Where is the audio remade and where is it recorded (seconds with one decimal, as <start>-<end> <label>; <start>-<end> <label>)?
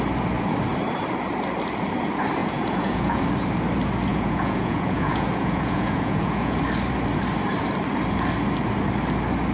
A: 0.0-2.4 recorded; 2.4-3.2 remade; 3.2-4.1 recorded; 4.1-6.6 remade; 6.6-9.5 recorded